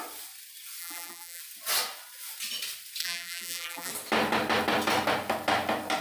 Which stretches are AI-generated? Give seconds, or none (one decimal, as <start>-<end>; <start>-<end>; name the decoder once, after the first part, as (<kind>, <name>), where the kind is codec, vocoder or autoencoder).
0.8-1.4 (vocoder, BigVGAN v2); 3.0-3.9